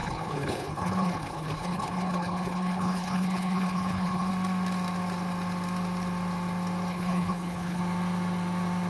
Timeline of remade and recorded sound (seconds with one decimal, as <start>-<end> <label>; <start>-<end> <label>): 0.0-4.3 remade; 4.3-6.9 recorded; 6.9-7.8 remade; 7.8-8.9 recorded